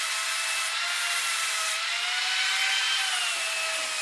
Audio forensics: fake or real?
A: real